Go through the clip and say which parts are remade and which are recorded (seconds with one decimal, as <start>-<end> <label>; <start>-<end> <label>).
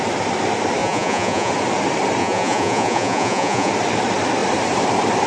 0.0-0.8 recorded; 0.8-1.5 remade; 1.5-2.2 recorded; 2.2-3.7 remade; 3.7-5.3 recorded